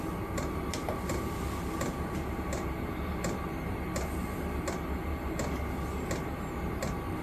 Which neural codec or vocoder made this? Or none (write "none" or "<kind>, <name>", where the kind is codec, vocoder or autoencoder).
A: none